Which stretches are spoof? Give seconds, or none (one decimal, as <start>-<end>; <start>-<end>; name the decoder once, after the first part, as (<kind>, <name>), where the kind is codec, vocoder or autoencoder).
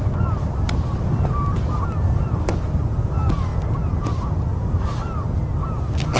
none